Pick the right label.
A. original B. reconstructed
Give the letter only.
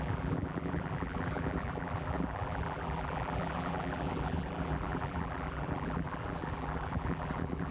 B